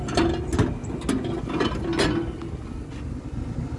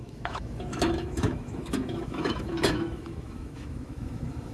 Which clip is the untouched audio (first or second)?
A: first